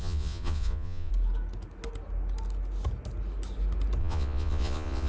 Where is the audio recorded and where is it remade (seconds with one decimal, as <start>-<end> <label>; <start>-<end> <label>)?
0.0-1.1 remade; 1.1-4.0 recorded; 4.0-5.1 remade